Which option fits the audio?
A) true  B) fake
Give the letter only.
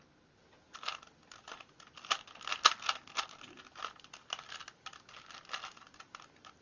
A